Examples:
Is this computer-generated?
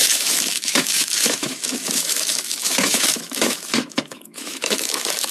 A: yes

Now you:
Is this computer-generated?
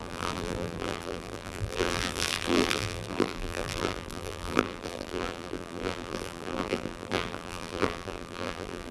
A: yes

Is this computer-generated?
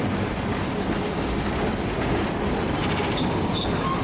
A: no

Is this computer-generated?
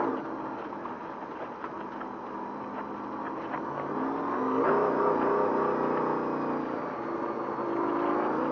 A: no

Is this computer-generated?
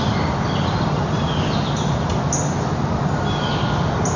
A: no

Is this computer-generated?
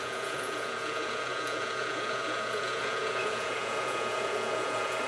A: yes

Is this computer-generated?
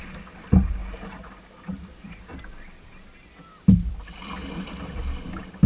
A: no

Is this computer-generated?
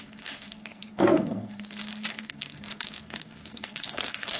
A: yes